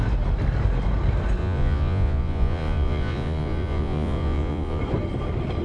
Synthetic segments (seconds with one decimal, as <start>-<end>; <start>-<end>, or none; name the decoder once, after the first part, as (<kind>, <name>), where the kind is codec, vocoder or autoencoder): 1.4-4.8 (vocoder, Vocos)